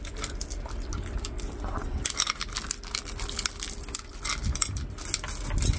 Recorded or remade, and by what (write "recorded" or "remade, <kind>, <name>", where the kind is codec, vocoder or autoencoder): recorded